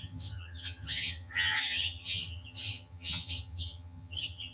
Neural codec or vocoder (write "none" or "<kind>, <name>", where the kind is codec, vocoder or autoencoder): vocoder, HiFi-GAN